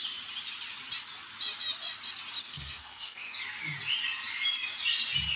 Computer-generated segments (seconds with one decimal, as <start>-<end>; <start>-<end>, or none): 2.4-3.4